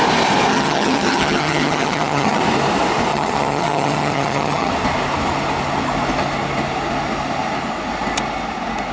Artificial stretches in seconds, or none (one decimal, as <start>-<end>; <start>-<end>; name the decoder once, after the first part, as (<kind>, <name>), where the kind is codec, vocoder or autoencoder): 0.5-2.4 (vocoder, HiFi-GAN); 3.1-4.7